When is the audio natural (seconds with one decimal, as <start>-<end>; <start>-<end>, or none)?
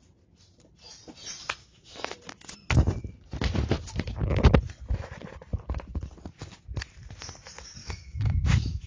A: 0.0-1.6; 2.1-7.8